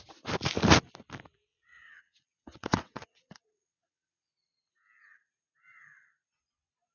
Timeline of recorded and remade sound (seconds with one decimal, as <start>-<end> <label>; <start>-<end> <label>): 0.0-1.5 recorded; 1.5-4.3 remade; 4.3-6.9 recorded